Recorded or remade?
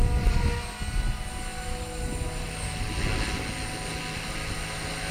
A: recorded